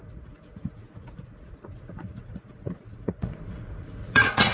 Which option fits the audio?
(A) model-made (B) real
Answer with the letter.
A